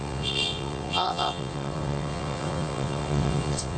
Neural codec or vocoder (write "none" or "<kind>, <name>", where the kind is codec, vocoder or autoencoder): vocoder, WaveNeXt